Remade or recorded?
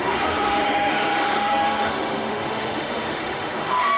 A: remade